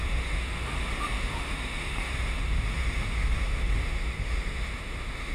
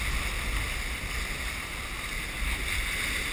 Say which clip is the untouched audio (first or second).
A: second